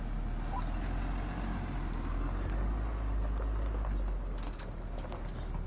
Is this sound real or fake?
real